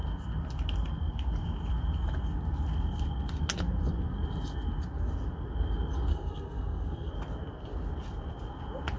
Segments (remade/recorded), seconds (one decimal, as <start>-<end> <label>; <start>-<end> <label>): 0.0-6.1 recorded; 6.1-7.1 remade; 7.1-9.0 recorded